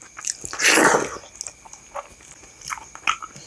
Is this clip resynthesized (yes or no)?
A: no